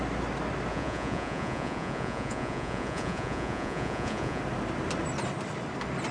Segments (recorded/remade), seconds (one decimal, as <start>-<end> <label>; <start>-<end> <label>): 0.0-0.7 recorded; 0.7-4.4 remade; 4.4-6.1 recorded